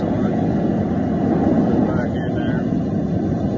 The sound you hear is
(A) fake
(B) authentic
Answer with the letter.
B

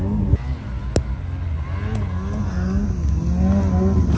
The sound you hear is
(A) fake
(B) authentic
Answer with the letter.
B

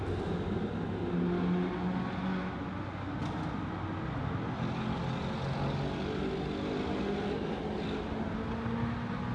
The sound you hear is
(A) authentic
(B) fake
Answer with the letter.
A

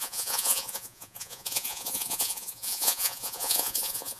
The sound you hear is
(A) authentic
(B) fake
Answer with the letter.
B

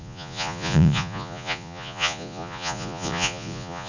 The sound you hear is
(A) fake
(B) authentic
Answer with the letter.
A